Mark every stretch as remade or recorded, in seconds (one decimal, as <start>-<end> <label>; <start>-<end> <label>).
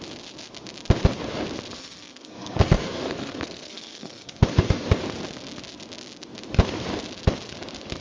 0.0-1.8 recorded; 1.8-5.0 remade; 5.0-8.0 recorded